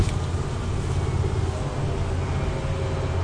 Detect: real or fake real